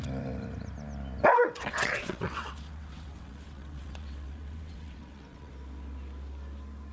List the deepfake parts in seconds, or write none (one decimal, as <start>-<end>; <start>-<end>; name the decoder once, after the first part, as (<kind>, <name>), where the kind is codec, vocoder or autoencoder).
1.4-5.5 (vocoder, WaveNeXt)